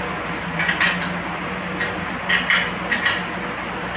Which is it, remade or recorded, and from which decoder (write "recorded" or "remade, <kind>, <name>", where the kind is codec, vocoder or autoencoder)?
recorded